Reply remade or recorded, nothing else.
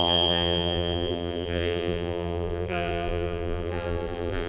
remade